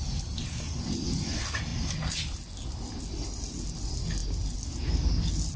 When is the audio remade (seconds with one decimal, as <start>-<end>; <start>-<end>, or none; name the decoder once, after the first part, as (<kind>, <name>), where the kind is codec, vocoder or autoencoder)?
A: none